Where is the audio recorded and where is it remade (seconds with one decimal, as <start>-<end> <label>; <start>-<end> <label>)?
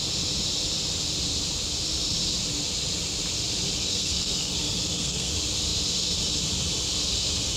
0.0-3.8 recorded; 3.8-5.3 remade; 5.3-7.6 recorded